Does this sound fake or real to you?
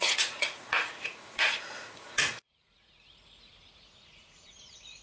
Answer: fake